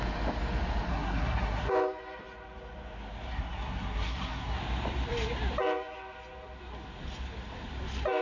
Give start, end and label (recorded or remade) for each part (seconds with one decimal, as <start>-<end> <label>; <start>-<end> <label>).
0.0-0.9 recorded; 0.9-1.7 remade; 1.7-3.3 recorded; 3.3-4.6 remade; 4.6-8.2 recorded